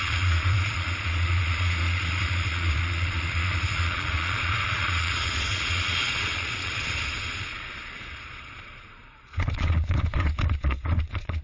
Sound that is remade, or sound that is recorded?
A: remade